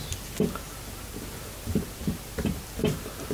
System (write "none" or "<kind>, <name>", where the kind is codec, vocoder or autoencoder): none